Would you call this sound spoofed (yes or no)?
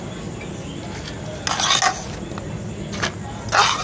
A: no